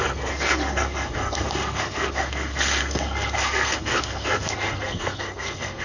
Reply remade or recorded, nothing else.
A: remade